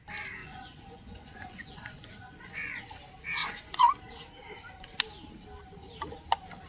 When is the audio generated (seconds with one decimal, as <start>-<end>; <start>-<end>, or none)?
0.4-2.8; 3.4-4.0